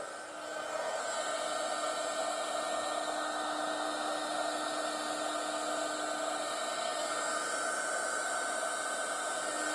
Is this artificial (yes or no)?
no